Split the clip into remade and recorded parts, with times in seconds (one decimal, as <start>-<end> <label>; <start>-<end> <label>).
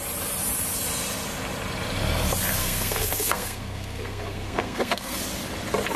0.0-2.6 recorded; 2.6-5.2 remade; 5.2-6.0 recorded